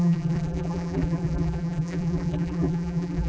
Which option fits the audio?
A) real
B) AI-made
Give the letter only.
B